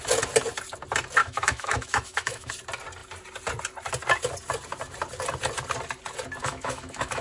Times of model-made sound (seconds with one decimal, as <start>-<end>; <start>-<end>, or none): 1.2-2.5; 6.4-7.2